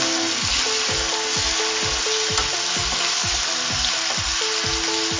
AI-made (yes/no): no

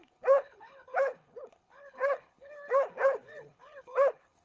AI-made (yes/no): yes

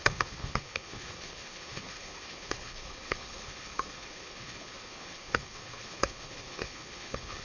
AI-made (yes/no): yes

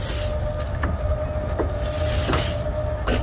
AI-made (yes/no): no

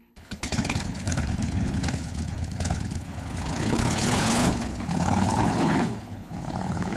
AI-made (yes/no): yes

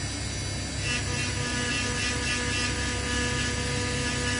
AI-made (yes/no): no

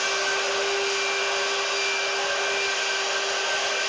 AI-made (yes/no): no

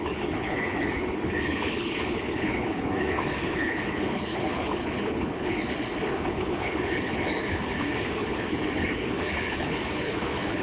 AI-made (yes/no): yes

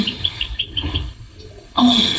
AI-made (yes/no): yes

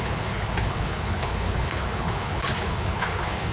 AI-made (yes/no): yes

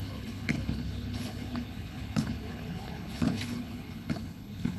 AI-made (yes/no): yes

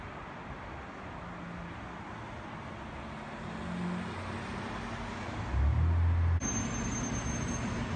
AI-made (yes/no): no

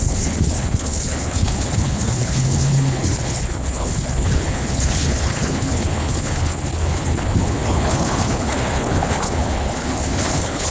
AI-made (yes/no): yes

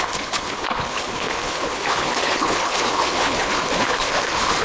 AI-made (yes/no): yes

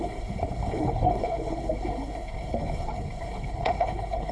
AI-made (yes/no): yes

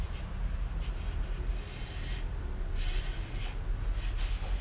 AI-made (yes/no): no